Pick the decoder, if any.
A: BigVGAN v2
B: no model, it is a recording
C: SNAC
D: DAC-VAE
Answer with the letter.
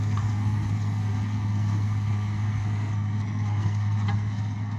C